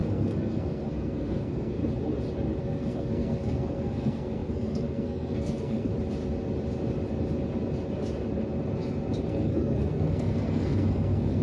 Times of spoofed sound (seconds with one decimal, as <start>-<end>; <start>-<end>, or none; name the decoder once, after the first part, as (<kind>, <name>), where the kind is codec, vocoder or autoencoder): 0.0-1.8 (codec, SNAC); 2.6-5.9; 9.2-11.4

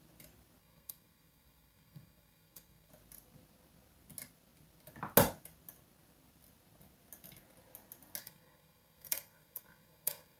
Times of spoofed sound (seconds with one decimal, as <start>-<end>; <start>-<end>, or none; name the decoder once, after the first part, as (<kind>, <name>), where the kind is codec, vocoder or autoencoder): 0.6-2.9 (codec, SNAC); 8.2-10.4

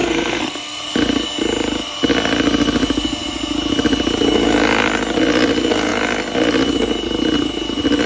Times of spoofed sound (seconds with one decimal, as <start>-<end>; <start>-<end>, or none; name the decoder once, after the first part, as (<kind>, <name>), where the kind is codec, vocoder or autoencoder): 0.0-0.8 (codec, SNAC)

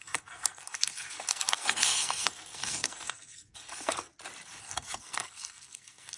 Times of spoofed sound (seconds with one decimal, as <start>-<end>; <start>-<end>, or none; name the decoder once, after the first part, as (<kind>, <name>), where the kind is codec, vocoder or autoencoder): 0.0-4.1 (codec, SNAC); 4.6-6.2

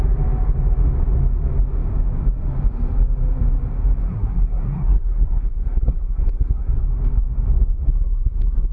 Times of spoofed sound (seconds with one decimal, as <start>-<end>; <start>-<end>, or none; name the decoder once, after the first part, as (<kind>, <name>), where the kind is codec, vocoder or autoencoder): 4.0-6.8 (codec, SNAC); 7.9-8.7

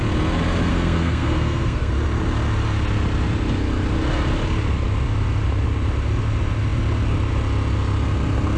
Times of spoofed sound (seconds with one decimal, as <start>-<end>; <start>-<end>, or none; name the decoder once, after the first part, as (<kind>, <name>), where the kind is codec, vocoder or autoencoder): 0.7-1.9 (codec, SNAC)